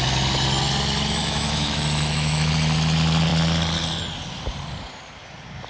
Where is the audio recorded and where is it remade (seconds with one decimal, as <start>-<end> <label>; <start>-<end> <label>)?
0.0-1.2 recorded; 1.2-2.5 remade; 2.5-5.7 recorded